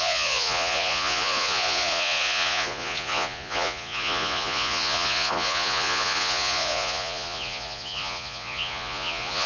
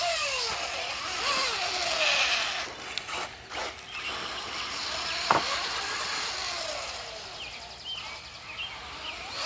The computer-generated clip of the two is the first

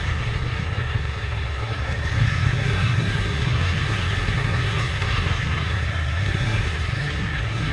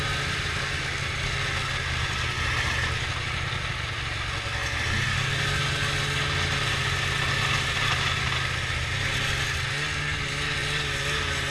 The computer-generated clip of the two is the first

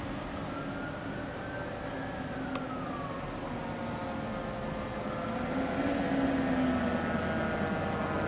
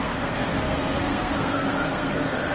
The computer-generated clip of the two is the second